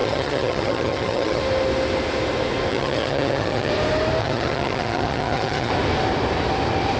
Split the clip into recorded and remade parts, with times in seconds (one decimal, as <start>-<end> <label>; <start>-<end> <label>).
0.0-1.4 remade; 1.4-2.7 recorded; 2.7-3.7 remade; 3.7-4.2 recorded; 4.2-5.7 remade; 5.7-7.0 recorded